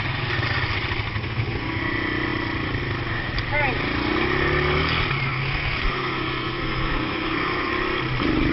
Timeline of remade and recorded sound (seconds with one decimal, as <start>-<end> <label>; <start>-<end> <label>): 0.0-1.1 recorded; 1.1-1.8 remade; 1.8-5.3 recorded; 5.3-7.7 remade; 7.7-8.5 recorded